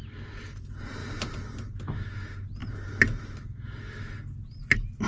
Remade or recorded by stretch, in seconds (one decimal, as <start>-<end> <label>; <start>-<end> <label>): 0.0-5.1 recorded